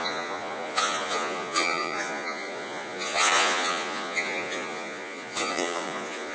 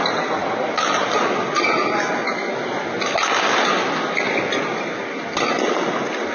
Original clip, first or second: second